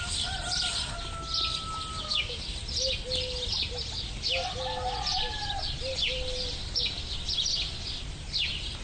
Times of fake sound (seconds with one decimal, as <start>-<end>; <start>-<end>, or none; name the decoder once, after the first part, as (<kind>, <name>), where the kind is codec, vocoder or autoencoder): 1.9-2.4 (codec, DAC)